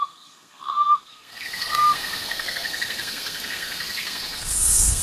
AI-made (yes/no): yes